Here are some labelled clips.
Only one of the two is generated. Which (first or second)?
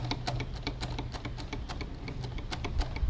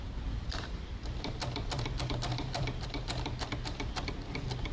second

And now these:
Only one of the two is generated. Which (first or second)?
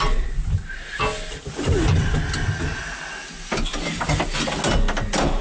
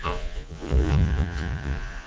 second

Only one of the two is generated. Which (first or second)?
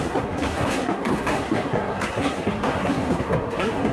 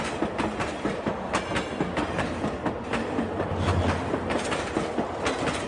first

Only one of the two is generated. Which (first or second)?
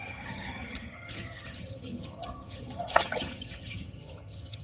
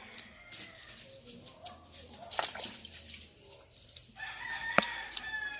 first